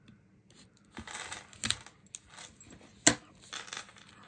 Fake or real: real